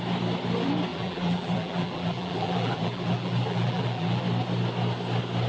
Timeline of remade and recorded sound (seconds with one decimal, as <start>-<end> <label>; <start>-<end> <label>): 0.0-0.9 recorded; 0.9-4.2 remade; 4.2-5.5 recorded

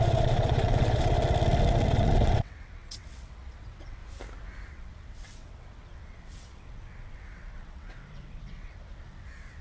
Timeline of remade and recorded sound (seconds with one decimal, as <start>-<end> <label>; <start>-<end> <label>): 0.0-1.2 remade; 1.2-1.9 recorded; 1.9-4.0 remade; 4.0-4.7 recorded; 4.7-9.6 remade

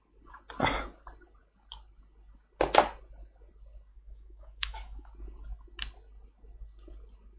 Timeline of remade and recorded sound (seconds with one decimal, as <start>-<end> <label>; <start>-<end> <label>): 0.0-3.9 recorded; 3.9-5.1 remade; 5.1-7.4 recorded

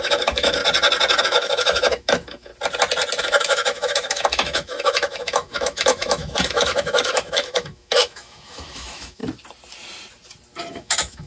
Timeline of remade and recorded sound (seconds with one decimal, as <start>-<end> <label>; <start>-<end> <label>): 0.0-0.6 remade; 0.6-1.2 recorded; 1.2-2.5 remade; 2.5-3.2 recorded; 3.2-9.2 remade; 9.2-10.7 recorded; 10.7-11.3 remade

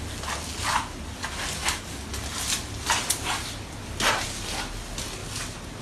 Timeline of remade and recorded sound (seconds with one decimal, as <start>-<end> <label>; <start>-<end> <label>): 0.0-5.8 recorded

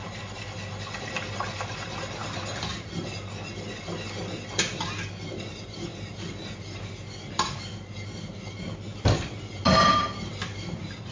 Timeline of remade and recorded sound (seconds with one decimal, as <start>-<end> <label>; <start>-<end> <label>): 0.0-2.2 remade; 2.2-5.5 recorded; 5.5-8.9 remade; 8.9-9.6 recorded; 9.6-11.1 remade

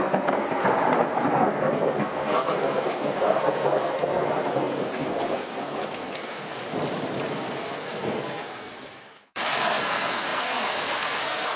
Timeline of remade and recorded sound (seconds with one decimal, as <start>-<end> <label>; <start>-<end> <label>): 0.0-0.6 remade; 0.6-1.3 recorded; 1.3-6.6 remade; 6.6-7.3 recorded; 7.3-11.6 remade

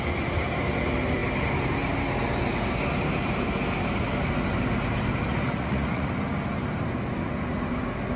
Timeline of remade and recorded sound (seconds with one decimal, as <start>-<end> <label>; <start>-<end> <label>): 0.0-5.3 recorded; 5.3-6.1 remade; 6.1-8.2 recorded